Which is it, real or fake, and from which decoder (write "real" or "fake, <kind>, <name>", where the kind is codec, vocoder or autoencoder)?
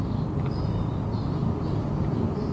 real